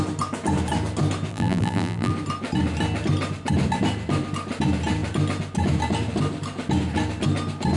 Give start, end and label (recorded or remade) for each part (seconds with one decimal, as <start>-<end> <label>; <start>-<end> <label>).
0.0-1.3 recorded; 1.3-2.1 remade; 2.1-7.8 recorded